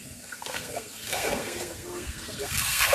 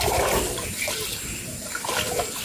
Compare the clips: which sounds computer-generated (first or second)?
first